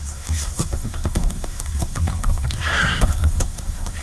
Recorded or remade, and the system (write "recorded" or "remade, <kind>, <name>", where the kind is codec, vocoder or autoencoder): remade, codec, SNAC